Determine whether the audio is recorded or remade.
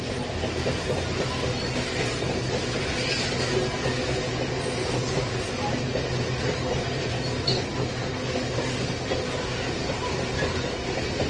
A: recorded